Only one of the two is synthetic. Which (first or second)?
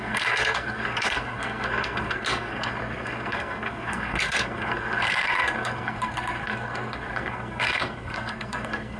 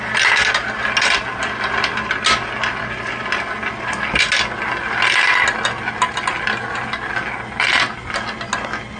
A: first